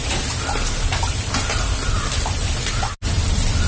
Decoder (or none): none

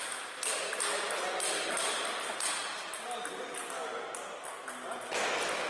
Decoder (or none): none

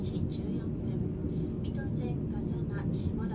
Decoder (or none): none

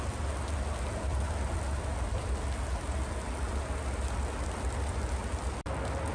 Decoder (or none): none